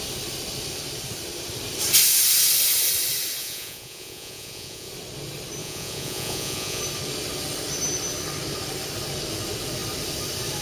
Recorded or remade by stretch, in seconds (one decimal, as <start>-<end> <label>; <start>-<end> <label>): 0.0-3.4 recorded; 3.4-4.9 remade; 4.9-5.6 recorded; 5.6-6.8 remade; 6.8-10.6 recorded